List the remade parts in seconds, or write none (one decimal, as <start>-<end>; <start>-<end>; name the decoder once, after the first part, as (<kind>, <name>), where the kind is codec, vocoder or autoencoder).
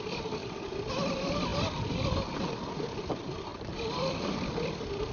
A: 3.5-4.5 (vocoder, BigVGAN v2)